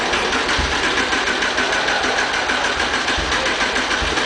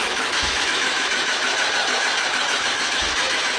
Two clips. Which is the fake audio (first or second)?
second